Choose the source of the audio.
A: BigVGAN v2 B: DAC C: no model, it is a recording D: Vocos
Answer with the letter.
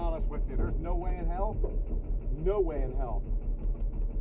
C